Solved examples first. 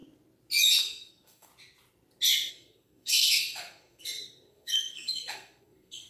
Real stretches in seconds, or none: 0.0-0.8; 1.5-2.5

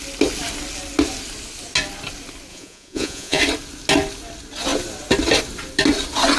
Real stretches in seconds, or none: 0.0-2.5; 3.4-6.4